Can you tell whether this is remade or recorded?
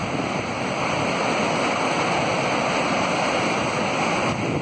recorded